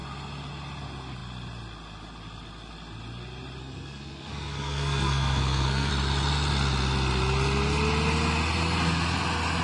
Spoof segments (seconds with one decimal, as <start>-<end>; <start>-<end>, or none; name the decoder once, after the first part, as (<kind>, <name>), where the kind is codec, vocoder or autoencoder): 3.6-5.9 (codec, SNAC)